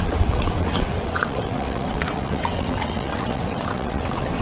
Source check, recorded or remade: remade